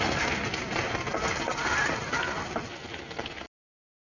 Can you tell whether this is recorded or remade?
recorded